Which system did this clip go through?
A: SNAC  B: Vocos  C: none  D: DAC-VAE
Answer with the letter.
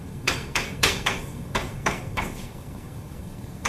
A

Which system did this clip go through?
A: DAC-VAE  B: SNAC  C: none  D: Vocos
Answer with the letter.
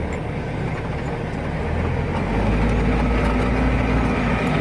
C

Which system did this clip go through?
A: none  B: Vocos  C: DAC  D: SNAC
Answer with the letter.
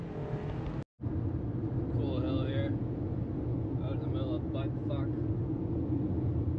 A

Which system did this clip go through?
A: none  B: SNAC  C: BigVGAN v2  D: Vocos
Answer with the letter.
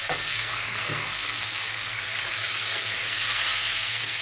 B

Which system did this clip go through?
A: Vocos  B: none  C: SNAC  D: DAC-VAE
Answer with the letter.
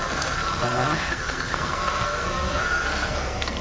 C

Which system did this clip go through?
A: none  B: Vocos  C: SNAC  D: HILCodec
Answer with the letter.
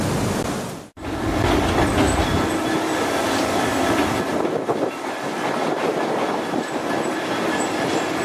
A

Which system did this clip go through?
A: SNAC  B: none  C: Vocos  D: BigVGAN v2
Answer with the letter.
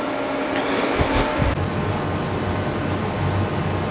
B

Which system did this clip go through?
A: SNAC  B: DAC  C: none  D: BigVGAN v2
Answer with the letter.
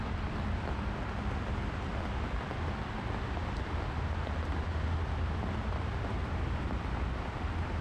C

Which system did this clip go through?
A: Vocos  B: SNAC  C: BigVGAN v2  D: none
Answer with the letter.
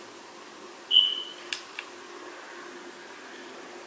D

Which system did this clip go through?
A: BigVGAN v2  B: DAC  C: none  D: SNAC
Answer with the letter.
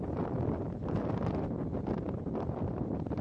C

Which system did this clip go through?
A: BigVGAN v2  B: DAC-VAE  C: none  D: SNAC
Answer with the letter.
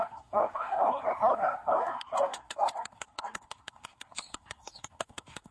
D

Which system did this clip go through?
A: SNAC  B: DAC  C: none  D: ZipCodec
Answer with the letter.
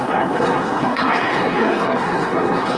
A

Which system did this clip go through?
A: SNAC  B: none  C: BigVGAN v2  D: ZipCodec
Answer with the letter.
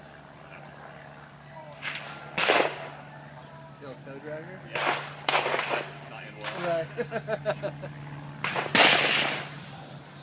B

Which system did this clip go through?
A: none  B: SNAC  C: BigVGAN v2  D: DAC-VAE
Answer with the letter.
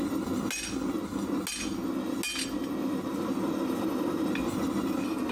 A